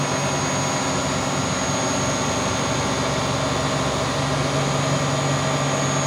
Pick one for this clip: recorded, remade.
recorded